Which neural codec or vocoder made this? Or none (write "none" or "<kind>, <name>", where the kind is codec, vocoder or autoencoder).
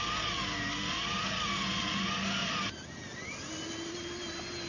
none